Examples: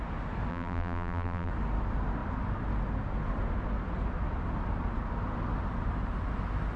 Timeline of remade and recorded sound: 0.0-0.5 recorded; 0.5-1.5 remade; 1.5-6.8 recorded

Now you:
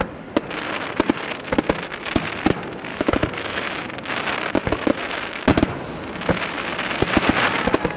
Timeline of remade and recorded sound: 0.0-2.9 recorded; 2.9-3.8 remade; 3.8-8.0 recorded

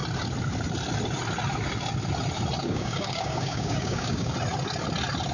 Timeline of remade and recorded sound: 0.0-2.6 recorded; 2.6-4.3 remade; 4.3-5.3 recorded

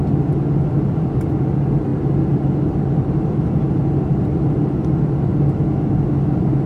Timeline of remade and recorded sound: 0.0-6.7 recorded

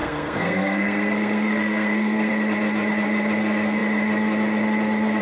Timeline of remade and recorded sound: 0.0-2.3 remade; 2.3-5.2 recorded

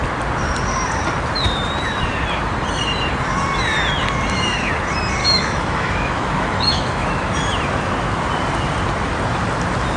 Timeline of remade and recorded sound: 0.0-5.2 recorded; 5.2-7.3 remade; 7.3-10.0 recorded

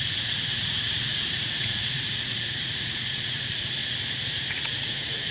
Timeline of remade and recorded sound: 0.0-3.8 remade; 3.8-4.5 recorded; 4.5-5.3 remade

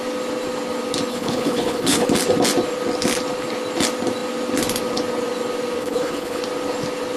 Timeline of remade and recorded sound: 0.0-1.1 recorded; 1.1-2.1 remade; 2.1-5.8 recorded; 5.8-6.4 remade; 6.4-7.2 recorded